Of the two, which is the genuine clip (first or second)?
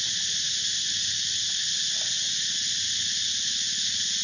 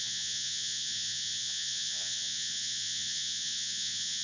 first